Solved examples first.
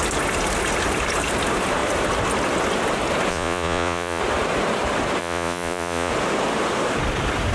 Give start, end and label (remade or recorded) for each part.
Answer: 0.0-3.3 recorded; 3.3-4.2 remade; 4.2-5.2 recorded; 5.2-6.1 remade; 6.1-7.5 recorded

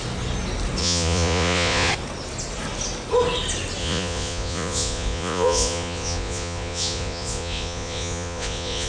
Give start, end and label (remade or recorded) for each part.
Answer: 0.0-0.8 recorded; 0.8-1.9 remade; 1.9-3.8 recorded; 3.8-8.9 remade